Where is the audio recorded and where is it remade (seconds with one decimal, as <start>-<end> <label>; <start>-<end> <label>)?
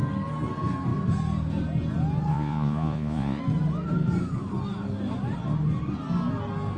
0.0-2.3 recorded; 2.3-3.4 remade; 3.4-6.8 recorded